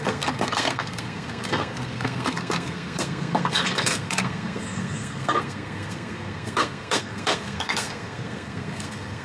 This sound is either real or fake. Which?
fake